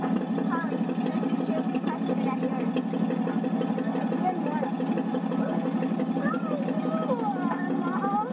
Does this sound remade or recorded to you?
recorded